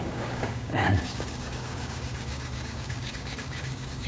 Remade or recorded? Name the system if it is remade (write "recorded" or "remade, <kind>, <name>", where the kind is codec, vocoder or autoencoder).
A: remade, codec, DAC